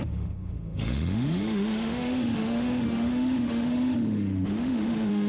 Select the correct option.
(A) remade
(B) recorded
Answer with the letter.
A